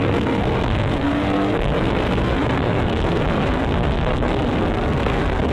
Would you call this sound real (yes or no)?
no